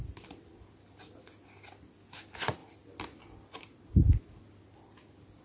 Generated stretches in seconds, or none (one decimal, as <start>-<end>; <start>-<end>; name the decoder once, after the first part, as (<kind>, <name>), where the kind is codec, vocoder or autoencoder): none